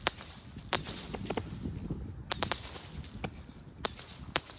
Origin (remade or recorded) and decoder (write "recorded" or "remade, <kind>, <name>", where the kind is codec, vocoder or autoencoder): recorded